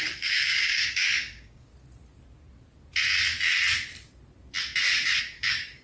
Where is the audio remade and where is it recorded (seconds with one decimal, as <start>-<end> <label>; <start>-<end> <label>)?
0.0-1.7 remade; 1.7-5.2 recorded; 5.2-5.8 remade